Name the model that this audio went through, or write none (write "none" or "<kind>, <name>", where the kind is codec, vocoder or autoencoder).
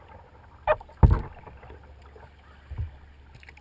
none